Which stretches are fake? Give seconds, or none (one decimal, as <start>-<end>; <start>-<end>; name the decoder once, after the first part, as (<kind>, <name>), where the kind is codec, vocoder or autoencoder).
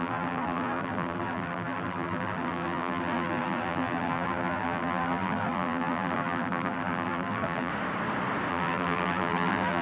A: 0.0-7.7 (vocoder, BigVGAN v2); 8.5-9.8